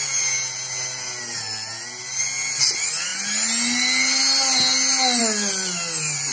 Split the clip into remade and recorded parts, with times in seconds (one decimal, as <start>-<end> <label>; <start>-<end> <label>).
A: 0.0-6.3 recorded